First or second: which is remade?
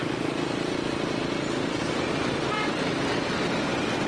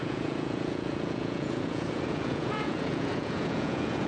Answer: second